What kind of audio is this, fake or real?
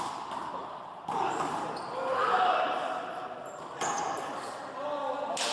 real